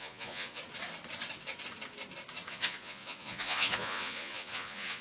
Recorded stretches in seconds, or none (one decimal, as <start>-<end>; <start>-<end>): 0.6-2.5